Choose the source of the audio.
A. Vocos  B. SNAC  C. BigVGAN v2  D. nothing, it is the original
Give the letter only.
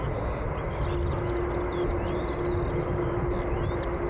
D